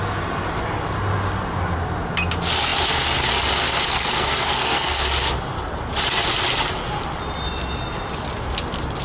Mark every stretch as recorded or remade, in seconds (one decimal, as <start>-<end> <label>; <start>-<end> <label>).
0.0-3.9 recorded; 3.9-5.1 remade; 5.1-9.0 recorded